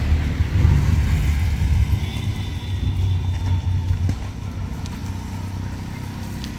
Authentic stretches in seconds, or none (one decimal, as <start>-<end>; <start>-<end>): 0.0-6.6